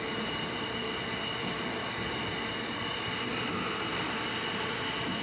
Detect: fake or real real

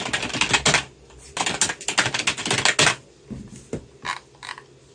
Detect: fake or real real